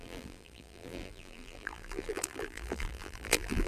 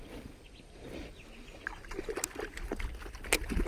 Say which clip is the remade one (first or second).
first